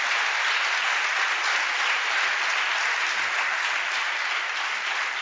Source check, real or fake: real